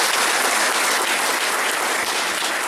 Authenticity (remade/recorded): recorded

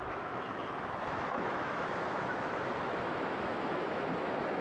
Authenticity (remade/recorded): remade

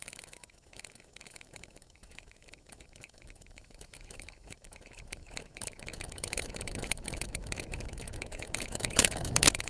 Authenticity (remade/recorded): remade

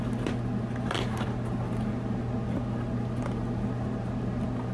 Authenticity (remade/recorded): recorded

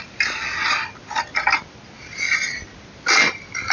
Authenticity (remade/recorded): recorded